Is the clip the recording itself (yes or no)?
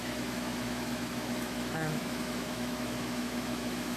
no